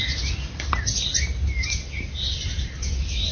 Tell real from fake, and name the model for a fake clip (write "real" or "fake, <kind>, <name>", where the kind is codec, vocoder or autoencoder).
real